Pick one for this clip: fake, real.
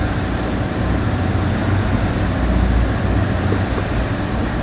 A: real